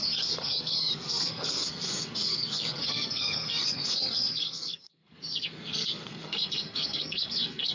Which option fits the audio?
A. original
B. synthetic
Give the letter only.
B